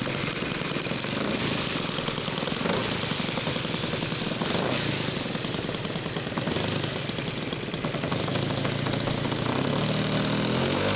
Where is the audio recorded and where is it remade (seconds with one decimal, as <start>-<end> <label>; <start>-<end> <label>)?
0.0-11.0 recorded